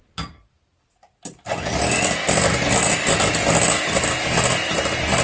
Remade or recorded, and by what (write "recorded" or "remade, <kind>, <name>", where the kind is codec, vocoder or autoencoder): recorded